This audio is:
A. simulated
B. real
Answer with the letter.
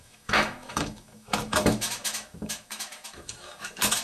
A